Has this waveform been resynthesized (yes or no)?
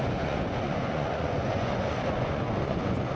yes